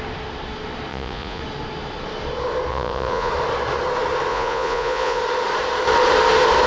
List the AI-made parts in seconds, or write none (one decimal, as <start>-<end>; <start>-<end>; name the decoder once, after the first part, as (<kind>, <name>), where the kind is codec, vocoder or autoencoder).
0.9-1.4 (vocoder, Vocos); 2.7-3.3; 4.3-5.2